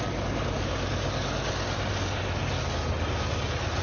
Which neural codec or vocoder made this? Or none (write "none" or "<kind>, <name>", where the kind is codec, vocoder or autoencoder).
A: none